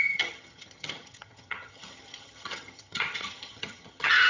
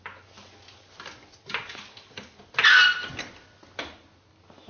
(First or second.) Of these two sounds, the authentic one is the second